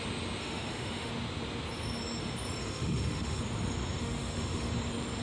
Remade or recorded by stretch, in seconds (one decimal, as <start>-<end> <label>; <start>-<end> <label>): 0.0-0.4 recorded; 0.4-1.1 remade; 1.1-2.6 recorded; 2.6-3.4 remade; 3.4-4.0 recorded; 4.0-4.7 remade; 4.7-5.2 recorded